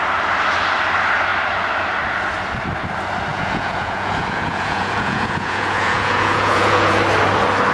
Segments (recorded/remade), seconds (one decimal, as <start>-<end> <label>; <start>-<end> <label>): 0.0-3.3 recorded; 3.3-7.0 remade; 7.0-7.7 recorded